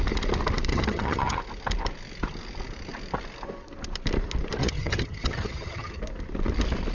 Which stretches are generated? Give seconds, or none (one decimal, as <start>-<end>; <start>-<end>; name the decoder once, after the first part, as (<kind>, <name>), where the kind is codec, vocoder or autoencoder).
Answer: 0.7-1.4 (vocoder, HiFi-GAN); 4.6-6.0